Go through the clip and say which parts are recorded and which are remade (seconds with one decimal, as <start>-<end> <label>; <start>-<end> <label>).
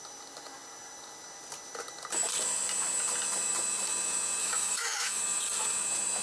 0.0-4.4 recorded; 4.4-5.2 remade; 5.2-6.2 recorded